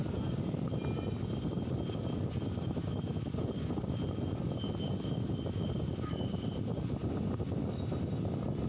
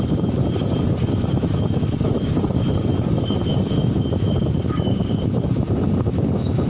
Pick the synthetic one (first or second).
second